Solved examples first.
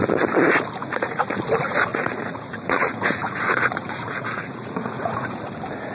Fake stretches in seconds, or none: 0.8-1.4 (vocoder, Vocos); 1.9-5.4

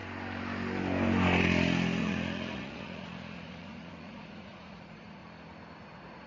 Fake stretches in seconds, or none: 2.0-5.2 (vocoder, Vocos); 5.8-6.3

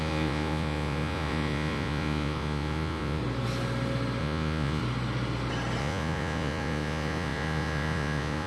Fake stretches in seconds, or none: 0.0-3.2 (vocoder, Vocos); 4.2-4.8; 5.8-8.5

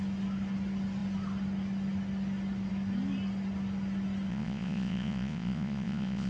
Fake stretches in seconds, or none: 4.3-6.3 (vocoder, Vocos)

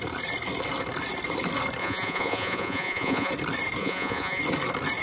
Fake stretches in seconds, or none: 1.8-3.3 (vocoder, Vocos); 3.8-4.4